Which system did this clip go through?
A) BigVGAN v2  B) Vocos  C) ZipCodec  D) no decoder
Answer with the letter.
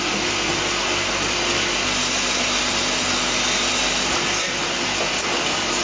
D